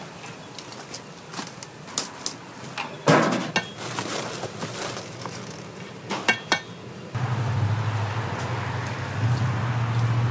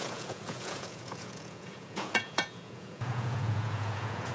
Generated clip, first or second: second